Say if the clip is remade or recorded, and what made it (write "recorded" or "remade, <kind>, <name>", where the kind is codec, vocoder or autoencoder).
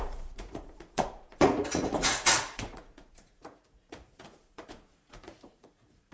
remade, vocoder, Vocos